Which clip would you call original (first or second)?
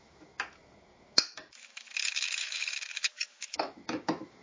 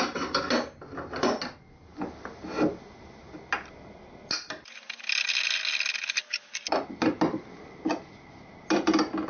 second